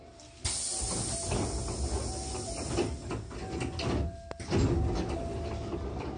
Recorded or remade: recorded